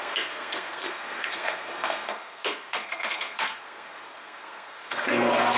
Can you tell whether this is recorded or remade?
remade